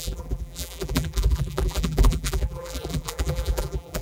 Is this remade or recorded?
remade